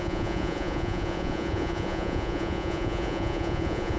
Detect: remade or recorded remade